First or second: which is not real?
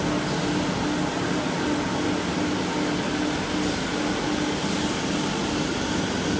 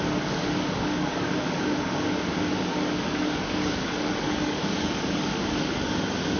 second